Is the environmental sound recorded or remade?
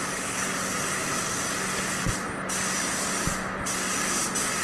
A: recorded